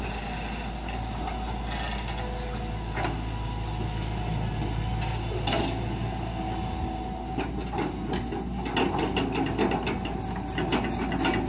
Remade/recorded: recorded